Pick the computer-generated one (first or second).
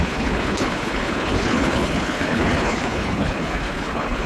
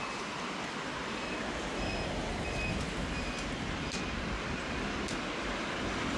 first